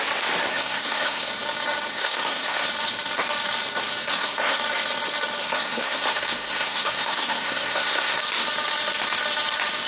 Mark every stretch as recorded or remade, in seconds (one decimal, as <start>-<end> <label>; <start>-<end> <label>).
0.0-0.5 recorded; 0.5-1.3 remade; 1.3-1.9 recorded; 1.9-2.7 remade; 2.7-4.0 recorded; 4.0-4.6 remade; 4.6-5.4 recorded; 5.4-8.2 remade; 8.2-9.9 recorded